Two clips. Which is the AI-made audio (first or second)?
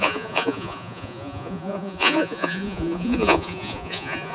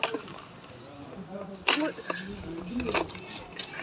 first